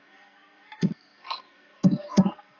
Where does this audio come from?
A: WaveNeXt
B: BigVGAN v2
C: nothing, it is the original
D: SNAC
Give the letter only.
D